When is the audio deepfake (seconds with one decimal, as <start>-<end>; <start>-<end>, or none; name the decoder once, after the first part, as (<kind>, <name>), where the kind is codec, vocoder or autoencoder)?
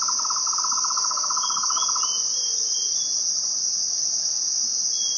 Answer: 1.0-1.8 (autoencoder, DAC-VAE)